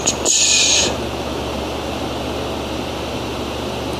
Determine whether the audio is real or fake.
real